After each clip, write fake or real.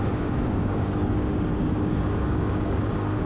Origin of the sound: fake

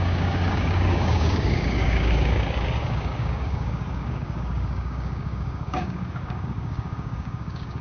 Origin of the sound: fake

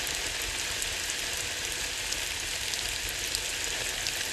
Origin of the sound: real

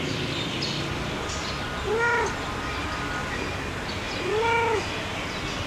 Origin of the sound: real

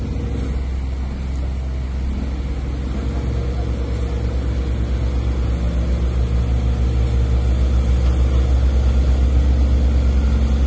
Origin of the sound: real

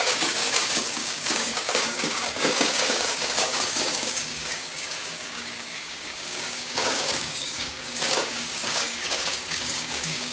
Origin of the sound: fake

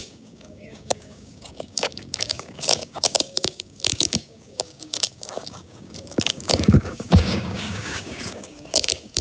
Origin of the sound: fake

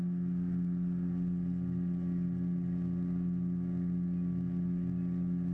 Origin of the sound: real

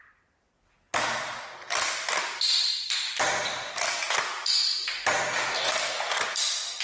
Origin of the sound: real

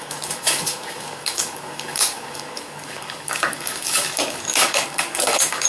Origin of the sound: fake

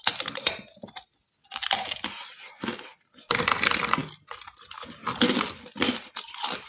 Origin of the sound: real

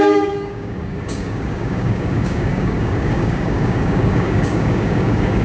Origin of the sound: fake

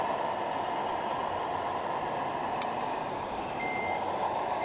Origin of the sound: real